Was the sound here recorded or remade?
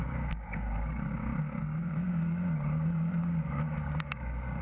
remade